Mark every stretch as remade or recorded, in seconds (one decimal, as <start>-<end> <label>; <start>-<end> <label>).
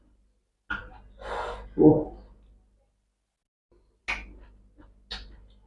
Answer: 0.0-5.7 recorded